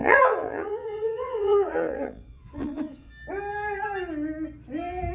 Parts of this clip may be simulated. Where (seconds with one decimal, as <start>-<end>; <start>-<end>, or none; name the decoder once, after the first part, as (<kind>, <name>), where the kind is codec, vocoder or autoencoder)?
0.0-3.1 (vocoder, Vocos)